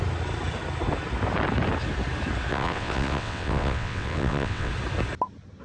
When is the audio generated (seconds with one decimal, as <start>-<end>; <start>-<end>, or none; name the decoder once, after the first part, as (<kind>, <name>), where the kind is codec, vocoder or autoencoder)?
2.5-4.7 (vocoder, WaveNeXt)